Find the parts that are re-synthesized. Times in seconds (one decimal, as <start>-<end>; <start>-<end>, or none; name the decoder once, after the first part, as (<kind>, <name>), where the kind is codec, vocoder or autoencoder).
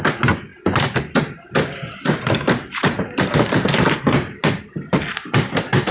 none